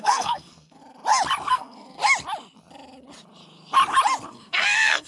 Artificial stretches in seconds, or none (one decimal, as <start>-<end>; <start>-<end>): 0.0-0.8; 1.5-2.0; 4.3-5.1